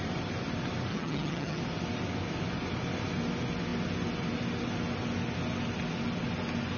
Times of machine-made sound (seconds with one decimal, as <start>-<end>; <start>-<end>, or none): 0.9-1.6